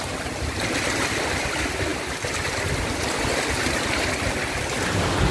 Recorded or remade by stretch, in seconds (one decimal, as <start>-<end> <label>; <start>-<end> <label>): 0.0-5.3 recorded